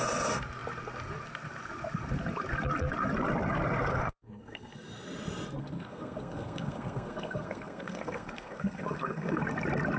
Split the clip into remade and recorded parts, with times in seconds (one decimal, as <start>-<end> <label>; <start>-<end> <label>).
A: 0.0-3.9 recorded; 3.9-4.7 remade; 4.7-5.6 recorded; 5.6-9.4 remade; 9.4-10.0 recorded

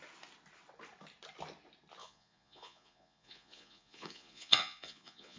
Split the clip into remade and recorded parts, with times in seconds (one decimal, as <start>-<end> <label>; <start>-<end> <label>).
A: 0.0-2.0 recorded; 2.0-5.4 remade

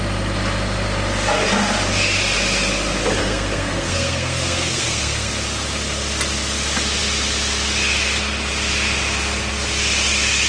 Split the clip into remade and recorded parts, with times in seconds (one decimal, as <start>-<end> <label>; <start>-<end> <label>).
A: 0.0-3.2 recorded; 3.2-5.3 remade; 5.3-10.5 recorded

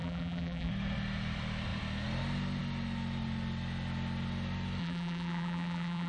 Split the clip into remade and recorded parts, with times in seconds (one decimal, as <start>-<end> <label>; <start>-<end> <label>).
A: 0.0-0.7 remade; 0.7-4.8 recorded; 4.8-6.1 remade

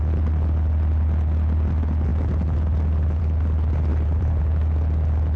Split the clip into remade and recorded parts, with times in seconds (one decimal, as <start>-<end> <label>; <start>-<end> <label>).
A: 0.0-3.9 recorded; 3.9-4.4 remade; 4.4-5.4 recorded

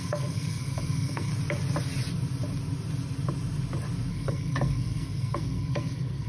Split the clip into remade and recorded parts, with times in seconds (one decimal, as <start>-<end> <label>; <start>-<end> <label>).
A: 0.0-1.3 remade; 1.3-4.1 recorded; 4.1-6.3 remade

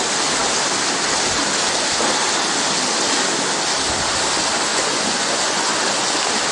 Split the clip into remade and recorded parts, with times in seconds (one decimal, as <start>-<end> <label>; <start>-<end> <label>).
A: 0.0-4.7 recorded; 4.7-5.8 remade; 5.8-6.5 recorded